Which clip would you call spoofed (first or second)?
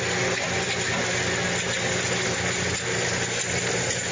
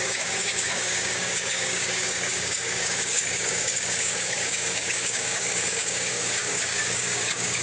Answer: second